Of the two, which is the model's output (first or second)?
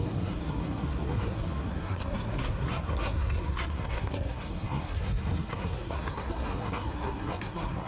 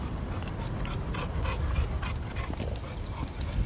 first